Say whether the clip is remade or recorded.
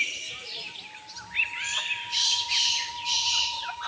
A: recorded